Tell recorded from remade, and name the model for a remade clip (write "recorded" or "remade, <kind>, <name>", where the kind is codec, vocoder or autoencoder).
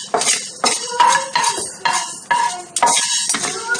recorded